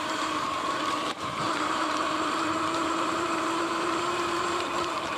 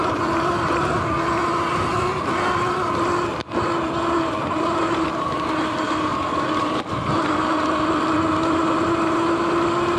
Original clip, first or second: second